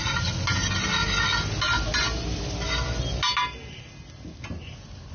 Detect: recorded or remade recorded